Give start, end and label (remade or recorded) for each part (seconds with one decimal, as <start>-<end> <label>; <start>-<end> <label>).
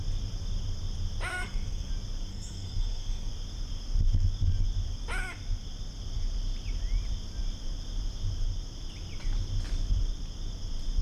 0.0-1.3 recorded; 1.3-1.9 remade; 1.9-2.3 recorded; 2.3-3.3 remade; 3.3-11.0 recorded